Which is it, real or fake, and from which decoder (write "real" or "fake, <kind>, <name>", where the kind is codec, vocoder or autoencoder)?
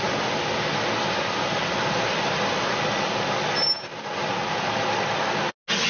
real